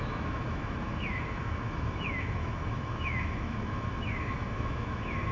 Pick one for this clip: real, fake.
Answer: fake